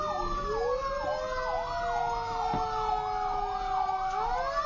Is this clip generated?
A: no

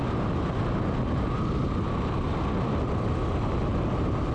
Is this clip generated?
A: no